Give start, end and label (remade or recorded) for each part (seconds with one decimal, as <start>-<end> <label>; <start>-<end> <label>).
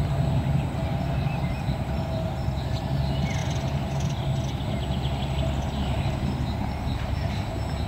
0.0-7.9 remade